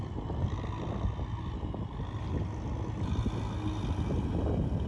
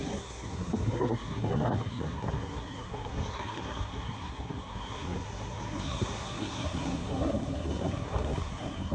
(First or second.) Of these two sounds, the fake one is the second